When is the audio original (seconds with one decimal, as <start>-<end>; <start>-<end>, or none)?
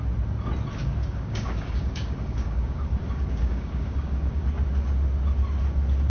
0.0-0.8; 4.4-6.1